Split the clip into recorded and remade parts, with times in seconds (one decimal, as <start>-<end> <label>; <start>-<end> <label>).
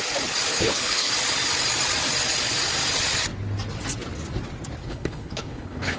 0.0-0.5 recorded; 0.5-1.1 remade; 1.1-4.8 recorded; 4.8-6.0 remade